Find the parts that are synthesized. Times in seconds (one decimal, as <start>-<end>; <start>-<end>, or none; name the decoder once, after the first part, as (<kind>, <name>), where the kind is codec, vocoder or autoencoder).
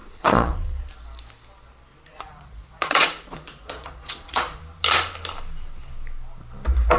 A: 0.0-0.9 (vocoder, Vocos); 2.1-4.6